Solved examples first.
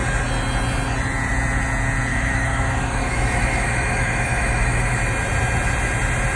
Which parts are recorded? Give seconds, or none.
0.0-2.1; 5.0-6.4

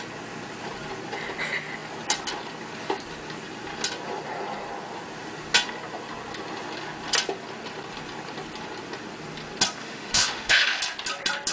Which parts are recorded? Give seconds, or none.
0.0-9.8; 10.8-11.5

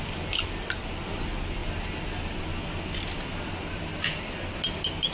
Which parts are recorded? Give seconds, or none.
0.0-5.1

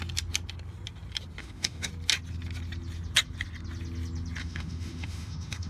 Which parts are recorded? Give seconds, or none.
0.0-1.4; 1.9-4.4